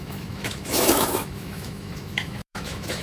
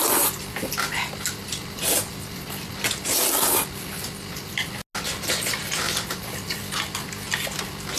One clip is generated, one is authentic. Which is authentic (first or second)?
second